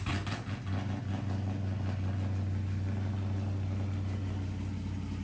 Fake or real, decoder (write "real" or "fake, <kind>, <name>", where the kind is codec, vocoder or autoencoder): real